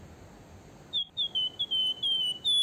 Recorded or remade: recorded